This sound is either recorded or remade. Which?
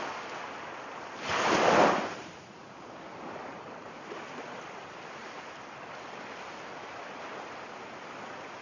recorded